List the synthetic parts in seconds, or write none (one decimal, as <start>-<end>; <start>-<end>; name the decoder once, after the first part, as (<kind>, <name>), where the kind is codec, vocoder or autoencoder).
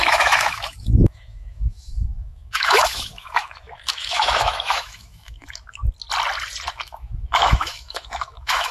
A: 0.0-5.8 (autoencoder, DAC-VAE); 6.7-8.7